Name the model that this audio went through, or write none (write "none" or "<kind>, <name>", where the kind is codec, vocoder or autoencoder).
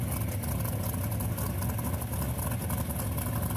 none